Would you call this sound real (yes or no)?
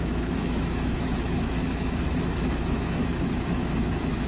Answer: no